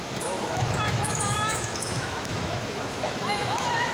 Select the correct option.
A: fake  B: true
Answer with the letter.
A